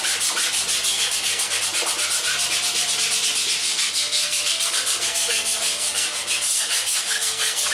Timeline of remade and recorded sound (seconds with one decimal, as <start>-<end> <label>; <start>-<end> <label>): 0.0-0.9 recorded; 0.9-1.6 remade; 1.6-3.6 recorded; 3.6-7.7 remade